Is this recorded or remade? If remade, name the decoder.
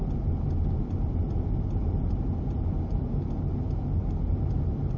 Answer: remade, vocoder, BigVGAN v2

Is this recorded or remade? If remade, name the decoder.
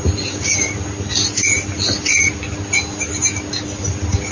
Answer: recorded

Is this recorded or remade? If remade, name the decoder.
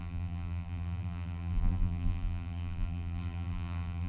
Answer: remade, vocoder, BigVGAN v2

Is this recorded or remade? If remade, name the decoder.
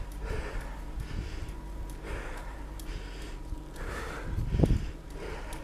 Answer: remade, vocoder, BigVGAN v2